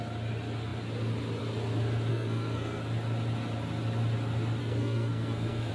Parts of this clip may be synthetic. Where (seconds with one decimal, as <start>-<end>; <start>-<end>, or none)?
2.1-2.8; 4.6-5.7

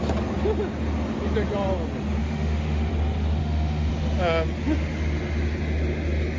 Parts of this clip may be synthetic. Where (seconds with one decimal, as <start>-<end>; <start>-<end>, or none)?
2.2-2.9; 3.4-3.9